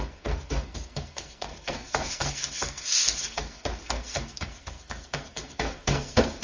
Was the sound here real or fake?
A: fake